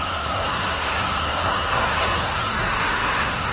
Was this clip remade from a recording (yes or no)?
yes